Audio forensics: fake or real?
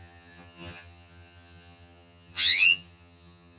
fake